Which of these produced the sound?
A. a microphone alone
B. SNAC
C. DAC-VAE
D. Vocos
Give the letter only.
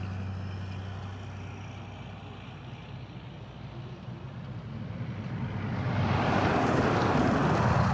A